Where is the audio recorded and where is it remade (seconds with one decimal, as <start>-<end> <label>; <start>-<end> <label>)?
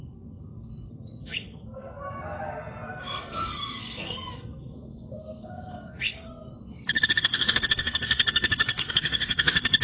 0.0-9.8 remade